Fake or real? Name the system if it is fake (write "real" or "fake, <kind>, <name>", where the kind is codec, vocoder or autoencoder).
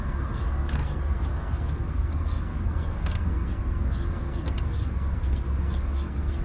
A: fake, codec, SNAC